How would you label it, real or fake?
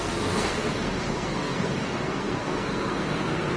fake